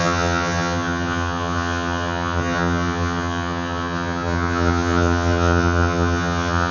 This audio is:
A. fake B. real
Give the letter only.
A